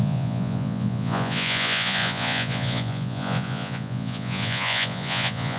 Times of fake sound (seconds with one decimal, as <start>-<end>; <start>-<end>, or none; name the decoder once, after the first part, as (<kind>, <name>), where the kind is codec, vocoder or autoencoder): 0.0-5.6 (vocoder, Vocos)